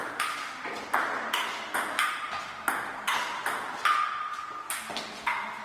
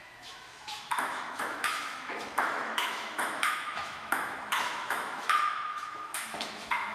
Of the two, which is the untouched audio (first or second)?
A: first